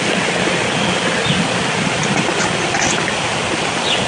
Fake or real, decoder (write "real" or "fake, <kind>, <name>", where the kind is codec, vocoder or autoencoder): real